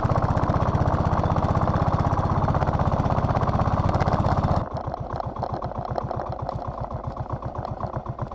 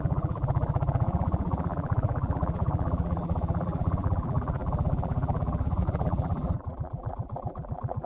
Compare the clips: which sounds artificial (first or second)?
second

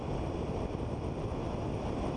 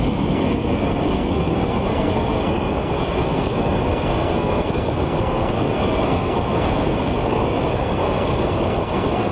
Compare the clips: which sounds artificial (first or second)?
second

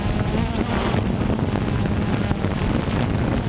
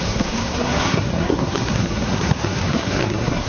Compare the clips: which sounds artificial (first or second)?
second